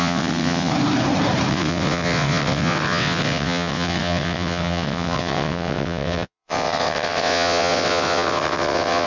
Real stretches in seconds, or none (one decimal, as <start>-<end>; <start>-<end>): 0.7-1.5